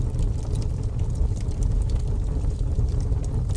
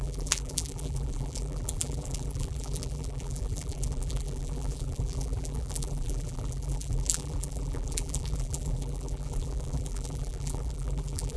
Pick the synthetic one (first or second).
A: second